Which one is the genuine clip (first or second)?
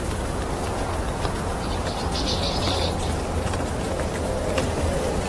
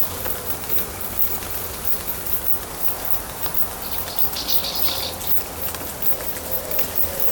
second